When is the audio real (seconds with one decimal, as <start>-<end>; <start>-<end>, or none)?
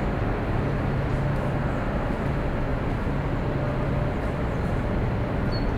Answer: 0.0-5.8